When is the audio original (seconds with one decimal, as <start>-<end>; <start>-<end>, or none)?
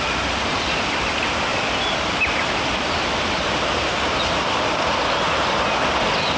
0.0-1.5; 4.2-6.4